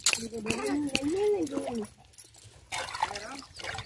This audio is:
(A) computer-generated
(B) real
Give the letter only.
B